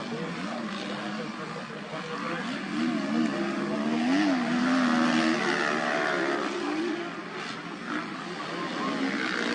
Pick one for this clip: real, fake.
real